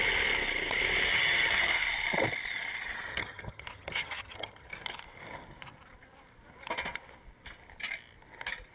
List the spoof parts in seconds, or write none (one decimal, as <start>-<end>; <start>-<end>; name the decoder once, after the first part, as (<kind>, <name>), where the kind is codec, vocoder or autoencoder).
1.1-1.7 (vocoder, HiFi-GAN); 3.1-4.7